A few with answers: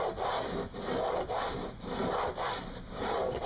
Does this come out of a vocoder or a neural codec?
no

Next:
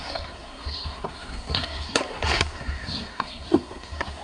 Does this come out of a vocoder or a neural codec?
yes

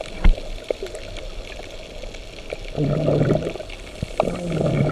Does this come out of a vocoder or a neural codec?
no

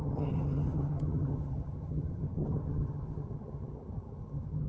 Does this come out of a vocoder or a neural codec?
yes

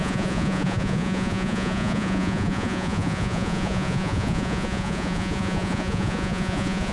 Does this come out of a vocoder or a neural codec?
yes